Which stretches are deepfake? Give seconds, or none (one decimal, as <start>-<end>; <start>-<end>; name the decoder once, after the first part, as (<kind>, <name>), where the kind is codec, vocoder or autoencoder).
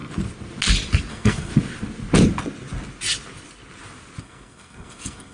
1.1-1.5 (codec, SNAC); 4.2-5.3